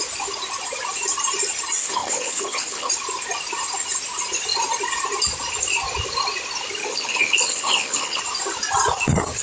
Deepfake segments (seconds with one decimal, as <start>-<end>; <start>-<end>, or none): 1.8-2.9; 6.8-8.2